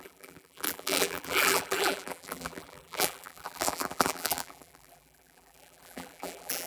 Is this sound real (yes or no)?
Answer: no